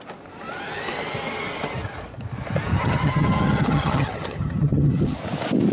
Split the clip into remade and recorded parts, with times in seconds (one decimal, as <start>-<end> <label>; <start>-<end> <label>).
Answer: 0.0-2.7 recorded; 2.7-5.2 remade; 5.2-5.7 recorded